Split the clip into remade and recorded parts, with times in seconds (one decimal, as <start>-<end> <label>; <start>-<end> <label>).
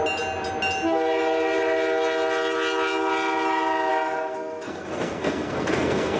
0.0-3.9 recorded; 3.9-6.2 remade